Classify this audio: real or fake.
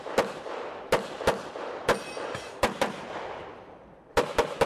real